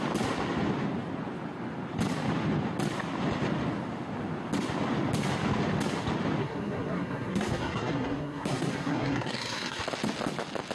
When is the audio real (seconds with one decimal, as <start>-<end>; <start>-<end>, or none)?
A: 0.0-6.4; 9.8-10.7